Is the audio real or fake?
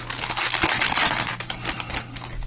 real